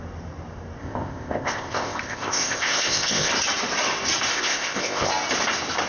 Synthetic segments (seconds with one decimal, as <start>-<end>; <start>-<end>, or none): 0.8-3.3; 4.3-5.1